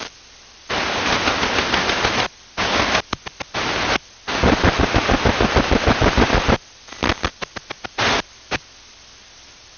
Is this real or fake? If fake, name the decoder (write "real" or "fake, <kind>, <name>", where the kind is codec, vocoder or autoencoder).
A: real